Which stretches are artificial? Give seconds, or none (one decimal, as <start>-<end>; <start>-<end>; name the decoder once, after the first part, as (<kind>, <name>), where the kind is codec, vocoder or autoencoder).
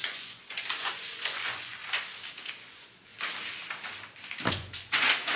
0.0-1.8 (vocoder, Vocos); 2.5-3.1; 4.5-5.4